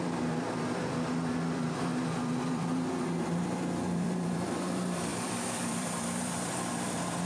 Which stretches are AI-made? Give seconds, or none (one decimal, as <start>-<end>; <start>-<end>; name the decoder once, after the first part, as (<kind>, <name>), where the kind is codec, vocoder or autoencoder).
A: 0.0-7.3 (vocoder, BigVGAN v2)